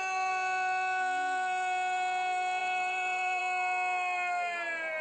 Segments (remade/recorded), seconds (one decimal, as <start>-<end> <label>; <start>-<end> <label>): 0.0-2.6 recorded; 2.6-3.4 remade; 3.4-5.0 recorded